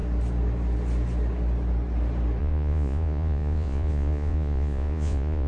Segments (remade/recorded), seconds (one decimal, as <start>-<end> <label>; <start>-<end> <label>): 0.0-2.4 recorded; 2.4-5.5 remade

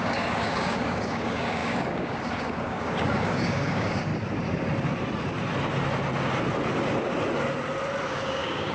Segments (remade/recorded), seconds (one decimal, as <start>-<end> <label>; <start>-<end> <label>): 0.0-4.1 remade; 4.1-8.1 recorded; 8.1-8.7 remade